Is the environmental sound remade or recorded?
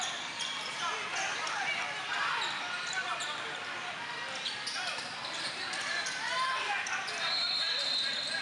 recorded